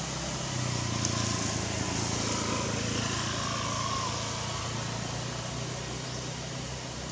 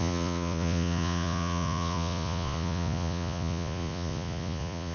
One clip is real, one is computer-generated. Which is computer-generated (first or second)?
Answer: second